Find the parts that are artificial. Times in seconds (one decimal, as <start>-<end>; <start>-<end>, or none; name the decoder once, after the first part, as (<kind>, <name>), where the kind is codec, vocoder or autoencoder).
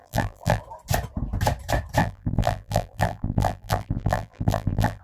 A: 0.0-0.6 (vocoder, BigVGAN v2); 2.0-5.0